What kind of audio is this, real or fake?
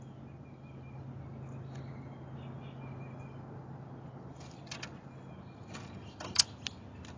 real